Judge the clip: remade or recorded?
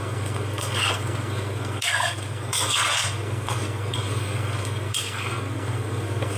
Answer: remade